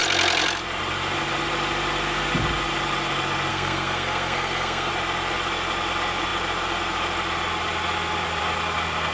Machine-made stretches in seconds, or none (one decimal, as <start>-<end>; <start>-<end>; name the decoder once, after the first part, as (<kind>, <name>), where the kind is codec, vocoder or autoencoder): 3.5-4.9 (codec, SNAC)